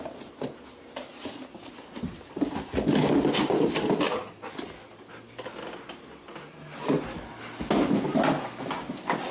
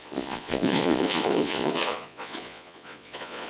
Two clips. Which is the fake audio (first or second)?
second